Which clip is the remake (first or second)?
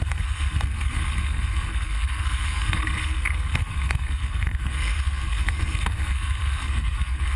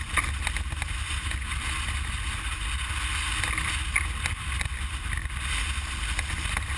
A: first